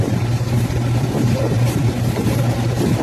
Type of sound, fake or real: fake